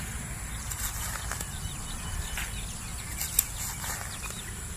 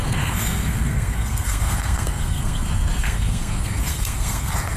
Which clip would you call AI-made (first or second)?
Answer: second